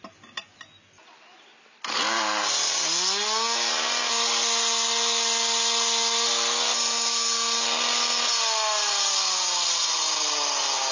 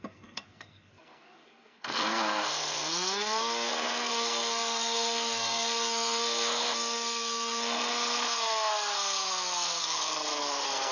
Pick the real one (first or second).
first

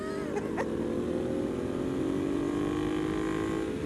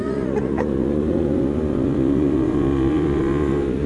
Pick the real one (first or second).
first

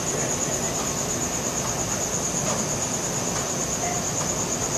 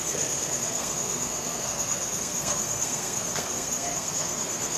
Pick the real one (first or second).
first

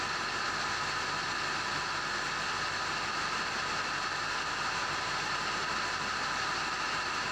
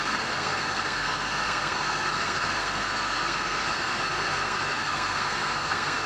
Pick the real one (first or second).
first